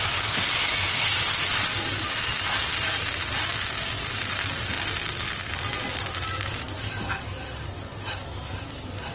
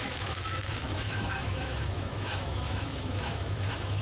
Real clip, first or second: first